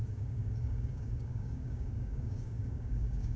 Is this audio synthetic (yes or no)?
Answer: yes